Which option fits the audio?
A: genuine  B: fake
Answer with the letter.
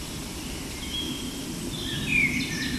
A